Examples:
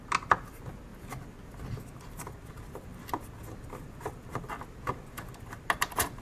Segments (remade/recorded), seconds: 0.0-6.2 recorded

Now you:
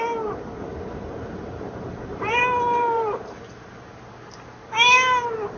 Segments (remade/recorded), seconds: 0.0-0.6 recorded; 0.6-4.0 remade; 4.0-5.6 recorded

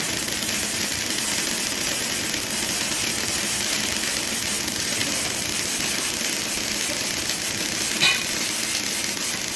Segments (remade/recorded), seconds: 0.0-5.0 recorded; 5.0-6.8 remade; 6.8-9.6 recorded